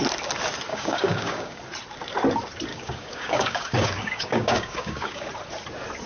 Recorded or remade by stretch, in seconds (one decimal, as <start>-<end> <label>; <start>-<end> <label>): 0.0-0.7 recorded; 0.7-1.6 remade; 1.6-2.7 recorded; 2.7-5.3 remade; 5.3-6.1 recorded